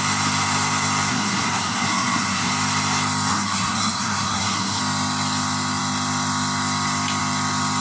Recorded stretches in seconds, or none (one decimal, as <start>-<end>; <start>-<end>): 0.0-1.1; 2.5-3.3; 4.8-7.8